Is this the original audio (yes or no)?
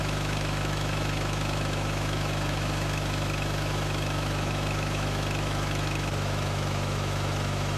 no